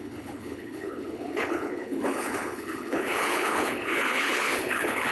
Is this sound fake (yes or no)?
yes